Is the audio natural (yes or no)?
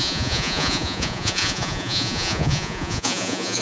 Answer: no